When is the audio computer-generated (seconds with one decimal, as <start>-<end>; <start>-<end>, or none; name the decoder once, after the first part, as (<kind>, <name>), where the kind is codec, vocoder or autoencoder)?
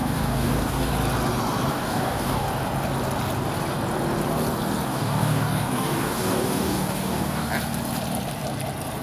0.0-0.9 (codec, DAC); 1.7-2.5; 4.9-7.5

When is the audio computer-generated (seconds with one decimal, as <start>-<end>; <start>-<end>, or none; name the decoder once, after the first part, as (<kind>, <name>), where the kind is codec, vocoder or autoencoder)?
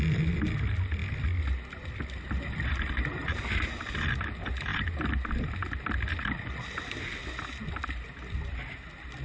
none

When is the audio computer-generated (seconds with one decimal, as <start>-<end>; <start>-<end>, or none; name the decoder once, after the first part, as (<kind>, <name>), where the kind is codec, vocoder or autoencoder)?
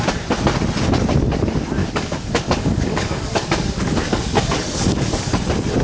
1.8-5.3 (codec, DAC)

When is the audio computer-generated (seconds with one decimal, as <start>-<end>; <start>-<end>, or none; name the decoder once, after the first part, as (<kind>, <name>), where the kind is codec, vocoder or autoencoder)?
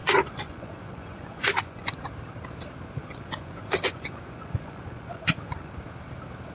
0.0-2.1 (vocoder, Vocos); 3.0-5.7